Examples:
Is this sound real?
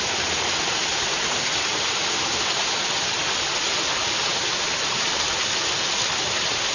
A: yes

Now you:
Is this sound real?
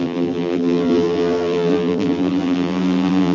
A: no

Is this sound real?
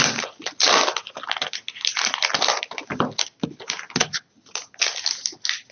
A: yes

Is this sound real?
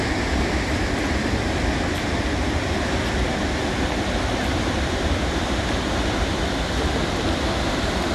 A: no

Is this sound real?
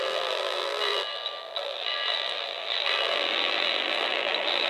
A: no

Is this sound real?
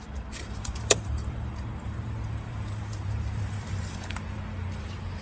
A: no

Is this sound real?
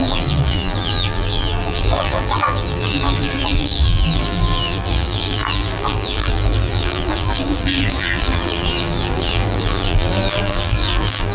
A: no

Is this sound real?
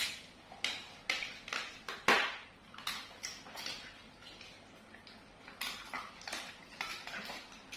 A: yes